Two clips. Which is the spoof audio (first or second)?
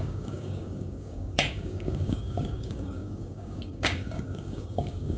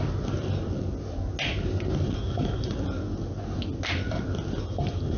first